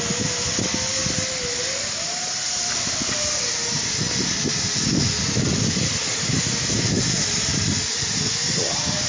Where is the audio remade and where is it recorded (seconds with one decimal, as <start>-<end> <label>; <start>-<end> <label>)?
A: 0.0-9.1 recorded